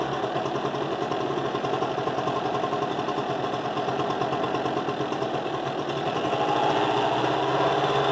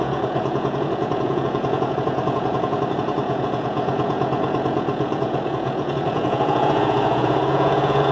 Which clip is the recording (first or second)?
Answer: first